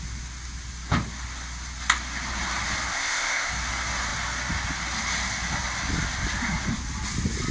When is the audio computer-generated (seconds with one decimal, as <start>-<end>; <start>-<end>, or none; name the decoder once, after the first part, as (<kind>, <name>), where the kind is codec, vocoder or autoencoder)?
2.9-3.5 (codec, ZipCodec)

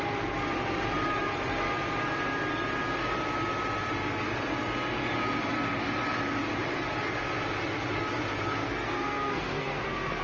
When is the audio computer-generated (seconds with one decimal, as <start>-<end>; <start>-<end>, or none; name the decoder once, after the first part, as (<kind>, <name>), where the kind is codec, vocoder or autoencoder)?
8.6-10.2 (codec, SNAC)

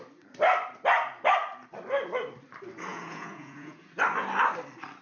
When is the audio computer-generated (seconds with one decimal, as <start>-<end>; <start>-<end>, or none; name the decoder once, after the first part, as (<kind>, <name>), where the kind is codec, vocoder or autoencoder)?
2.9-3.9 (vocoder, Vocos)

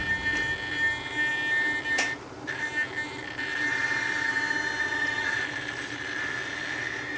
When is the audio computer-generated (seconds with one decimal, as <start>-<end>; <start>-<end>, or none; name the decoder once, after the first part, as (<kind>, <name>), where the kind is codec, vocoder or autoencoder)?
4.8-5.4 (vocoder, Vocos)

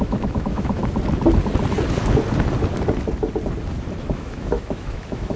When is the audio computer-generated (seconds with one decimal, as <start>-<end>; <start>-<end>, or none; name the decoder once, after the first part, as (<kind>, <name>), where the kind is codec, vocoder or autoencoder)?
0.0-0.8 (autoencoder, DAC-VAE); 4.0-5.4

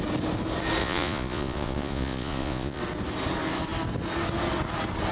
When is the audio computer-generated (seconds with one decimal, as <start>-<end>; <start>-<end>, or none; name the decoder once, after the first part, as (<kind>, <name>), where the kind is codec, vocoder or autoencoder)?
0.8-2.8 (vocoder, Vocos)

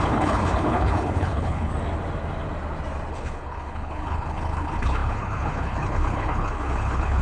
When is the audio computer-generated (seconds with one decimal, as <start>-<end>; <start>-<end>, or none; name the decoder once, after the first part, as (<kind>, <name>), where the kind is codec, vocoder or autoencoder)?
0.0-1.7 (codec, HILCodec); 3.1-7.2

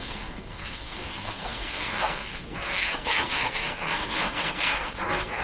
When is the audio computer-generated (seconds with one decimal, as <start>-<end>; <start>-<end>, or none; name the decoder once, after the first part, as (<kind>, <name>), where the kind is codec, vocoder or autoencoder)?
0.0-5.4 (codec, SNAC)